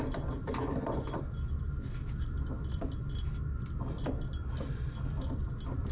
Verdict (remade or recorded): recorded